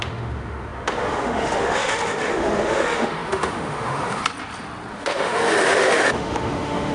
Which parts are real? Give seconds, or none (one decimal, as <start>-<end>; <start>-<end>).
4.2-4.9